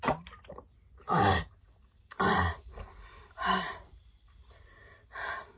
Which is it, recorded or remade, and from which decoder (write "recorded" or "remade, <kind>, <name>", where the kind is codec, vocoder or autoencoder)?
recorded